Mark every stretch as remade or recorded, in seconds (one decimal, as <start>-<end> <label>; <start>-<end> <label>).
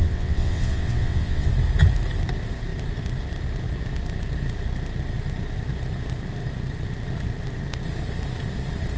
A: 0.0-1.5 remade; 1.5-9.0 recorded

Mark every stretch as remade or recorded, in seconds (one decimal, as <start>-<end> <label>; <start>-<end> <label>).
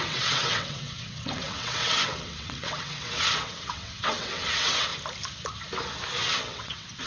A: 0.0-4.9 remade; 4.9-6.3 recorded; 6.3-7.1 remade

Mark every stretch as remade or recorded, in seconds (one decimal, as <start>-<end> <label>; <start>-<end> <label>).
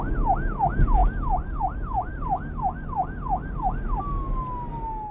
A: 0.0-5.1 recorded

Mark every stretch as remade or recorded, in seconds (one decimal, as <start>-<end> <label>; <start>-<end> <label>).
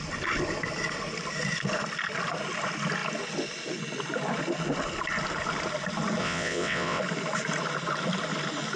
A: 0.0-6.2 recorded; 6.2-7.0 remade; 7.0-8.8 recorded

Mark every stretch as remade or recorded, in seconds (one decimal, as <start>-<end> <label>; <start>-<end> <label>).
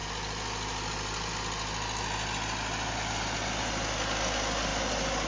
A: 0.0-5.3 recorded